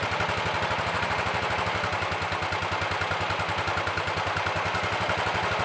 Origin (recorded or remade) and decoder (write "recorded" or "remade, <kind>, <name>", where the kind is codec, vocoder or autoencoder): recorded